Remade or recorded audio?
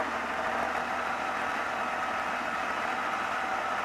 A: recorded